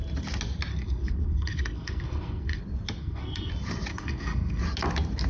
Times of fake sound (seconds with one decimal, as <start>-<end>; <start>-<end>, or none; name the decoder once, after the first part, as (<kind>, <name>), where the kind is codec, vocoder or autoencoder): 0.7-2.6 (codec, SNAC); 3.0-3.5; 3.9-4.6